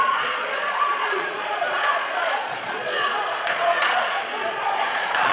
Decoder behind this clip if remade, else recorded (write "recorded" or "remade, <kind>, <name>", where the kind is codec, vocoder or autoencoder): remade, vocoder, Vocos